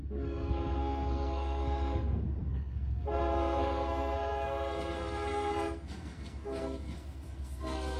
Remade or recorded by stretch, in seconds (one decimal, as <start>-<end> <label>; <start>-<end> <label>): 0.0-8.0 remade